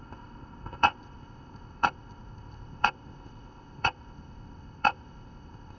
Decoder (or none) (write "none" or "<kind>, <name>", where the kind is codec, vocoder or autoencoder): codec, ZipCodec